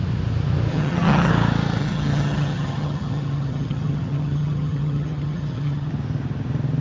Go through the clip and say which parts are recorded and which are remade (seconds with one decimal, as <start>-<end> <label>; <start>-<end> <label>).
0.0-0.7 recorded; 0.7-1.3 remade; 1.3-1.8 recorded; 1.8-5.9 remade; 5.9-6.8 recorded